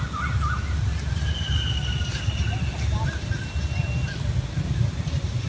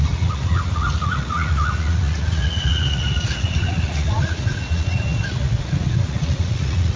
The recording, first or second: first